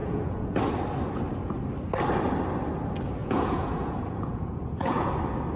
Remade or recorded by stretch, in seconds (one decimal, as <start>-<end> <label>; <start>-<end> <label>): 0.0-0.6 remade; 0.6-3.2 recorded; 3.2-5.1 remade; 5.1-5.6 recorded